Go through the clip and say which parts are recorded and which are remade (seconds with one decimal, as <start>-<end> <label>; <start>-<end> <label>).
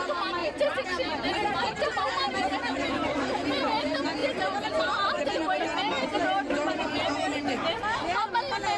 0.0-0.4 recorded; 0.4-3.5 remade; 3.5-4.2 recorded; 4.2-5.6 remade; 5.6-8.8 recorded